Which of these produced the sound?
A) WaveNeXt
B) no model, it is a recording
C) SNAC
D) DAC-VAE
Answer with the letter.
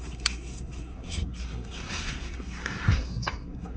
C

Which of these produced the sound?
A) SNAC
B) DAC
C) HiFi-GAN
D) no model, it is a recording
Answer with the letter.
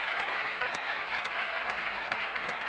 A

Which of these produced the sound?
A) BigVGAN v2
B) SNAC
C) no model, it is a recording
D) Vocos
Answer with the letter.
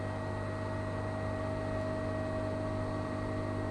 C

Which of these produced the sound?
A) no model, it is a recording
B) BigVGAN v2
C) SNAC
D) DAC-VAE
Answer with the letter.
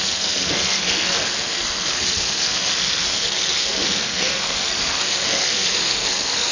C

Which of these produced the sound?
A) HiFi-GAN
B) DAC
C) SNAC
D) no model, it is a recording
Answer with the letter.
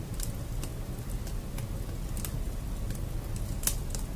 D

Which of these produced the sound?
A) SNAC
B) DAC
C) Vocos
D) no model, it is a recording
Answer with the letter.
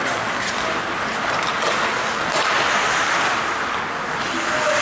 D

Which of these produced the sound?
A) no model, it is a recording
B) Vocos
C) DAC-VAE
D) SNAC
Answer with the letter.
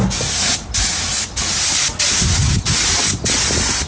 A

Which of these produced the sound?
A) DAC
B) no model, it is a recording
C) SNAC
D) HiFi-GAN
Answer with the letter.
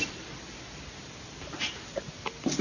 B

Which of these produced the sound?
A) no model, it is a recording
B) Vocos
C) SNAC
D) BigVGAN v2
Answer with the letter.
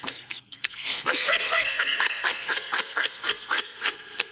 C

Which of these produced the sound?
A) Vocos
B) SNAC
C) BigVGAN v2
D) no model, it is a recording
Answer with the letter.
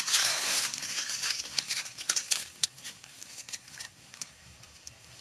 B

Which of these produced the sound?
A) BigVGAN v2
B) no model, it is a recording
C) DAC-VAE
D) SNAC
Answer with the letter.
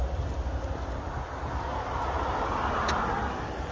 B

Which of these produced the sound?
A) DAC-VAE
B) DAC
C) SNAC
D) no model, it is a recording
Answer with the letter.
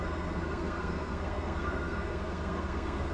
C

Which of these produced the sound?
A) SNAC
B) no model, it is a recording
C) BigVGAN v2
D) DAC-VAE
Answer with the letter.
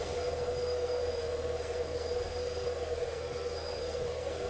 A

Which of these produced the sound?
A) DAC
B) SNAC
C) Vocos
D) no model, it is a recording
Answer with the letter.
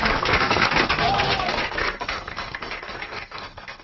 B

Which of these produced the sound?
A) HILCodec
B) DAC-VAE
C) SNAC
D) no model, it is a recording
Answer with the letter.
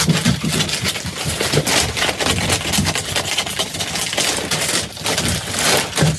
D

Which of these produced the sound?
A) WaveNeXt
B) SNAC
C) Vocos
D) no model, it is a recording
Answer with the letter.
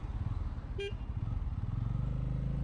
D